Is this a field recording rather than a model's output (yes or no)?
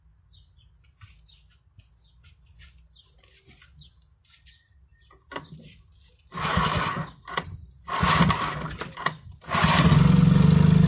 yes